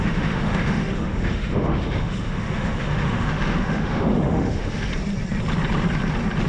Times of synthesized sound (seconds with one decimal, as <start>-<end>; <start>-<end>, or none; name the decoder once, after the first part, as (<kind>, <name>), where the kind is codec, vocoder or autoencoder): 0.0-4.9 (autoencoder, DAC-VAE)